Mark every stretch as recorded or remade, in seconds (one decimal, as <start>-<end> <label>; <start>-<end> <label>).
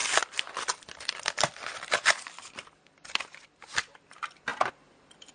0.0-3.2 remade; 3.2-5.3 recorded